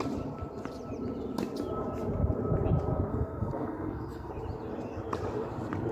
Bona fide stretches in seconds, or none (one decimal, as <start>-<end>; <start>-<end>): 0.0-3.1; 4.3-5.9